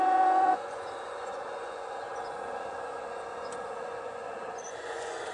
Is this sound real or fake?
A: fake